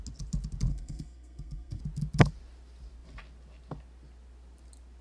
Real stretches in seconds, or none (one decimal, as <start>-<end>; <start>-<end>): 0.0-0.7; 1.8-5.0